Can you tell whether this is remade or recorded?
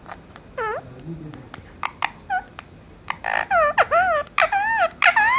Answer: recorded